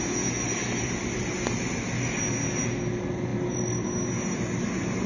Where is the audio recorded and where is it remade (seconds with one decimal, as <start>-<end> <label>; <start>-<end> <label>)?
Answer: 0.0-5.1 recorded